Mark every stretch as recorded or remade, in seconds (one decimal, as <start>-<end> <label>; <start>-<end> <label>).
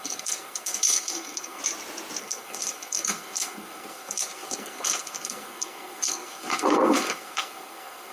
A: 0.0-1.6 remade; 1.6-2.2 recorded; 2.2-8.1 remade